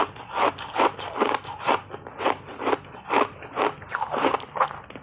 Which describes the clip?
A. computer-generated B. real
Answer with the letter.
B